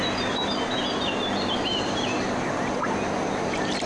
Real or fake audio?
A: real